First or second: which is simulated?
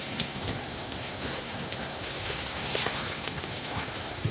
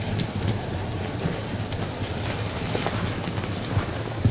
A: first